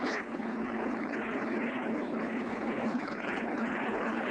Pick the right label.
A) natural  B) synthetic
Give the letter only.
B